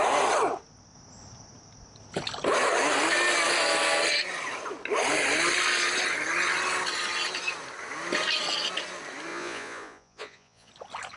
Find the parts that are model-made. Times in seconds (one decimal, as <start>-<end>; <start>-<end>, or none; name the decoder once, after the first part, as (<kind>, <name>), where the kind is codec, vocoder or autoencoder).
9.3-10.7 (vocoder, Vocos)